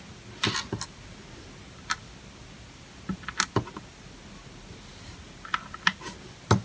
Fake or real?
real